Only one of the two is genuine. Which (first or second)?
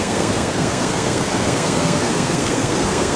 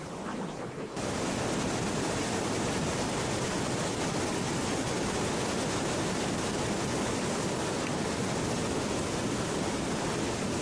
second